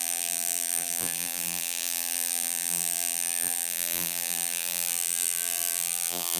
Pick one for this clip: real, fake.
fake